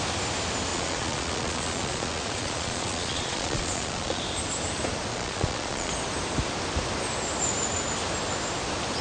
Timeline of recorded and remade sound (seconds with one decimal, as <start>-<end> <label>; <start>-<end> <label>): 0.0-0.7 recorded; 0.7-4.2 remade; 4.2-5.1 recorded; 5.1-5.9 remade; 5.9-9.0 recorded